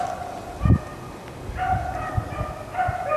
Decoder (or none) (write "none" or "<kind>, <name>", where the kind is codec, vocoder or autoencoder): none